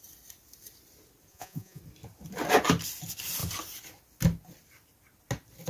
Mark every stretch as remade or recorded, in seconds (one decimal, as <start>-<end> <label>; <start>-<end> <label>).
0.0-1.3 recorded; 1.3-1.8 remade; 1.8-5.7 recorded